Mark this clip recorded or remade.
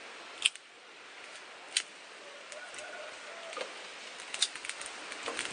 recorded